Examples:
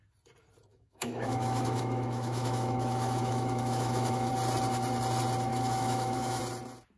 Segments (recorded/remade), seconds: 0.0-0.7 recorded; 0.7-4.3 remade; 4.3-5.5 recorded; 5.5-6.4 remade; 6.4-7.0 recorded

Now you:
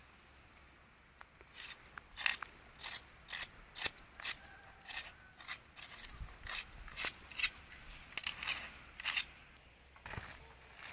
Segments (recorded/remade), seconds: 0.0-10.9 recorded

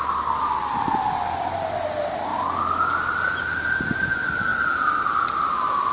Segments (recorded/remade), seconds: 0.0-5.9 recorded

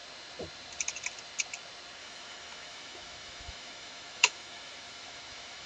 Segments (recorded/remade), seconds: 0.0-2.0 recorded; 2.0-5.7 remade

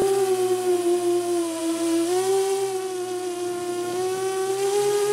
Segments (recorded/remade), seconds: 0.0-3.7 recorded; 3.7-4.5 remade; 4.5-5.1 recorded